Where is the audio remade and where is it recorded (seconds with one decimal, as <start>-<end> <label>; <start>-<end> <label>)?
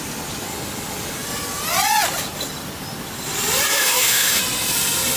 0.0-3.7 recorded; 3.7-4.4 remade; 4.4-5.2 recorded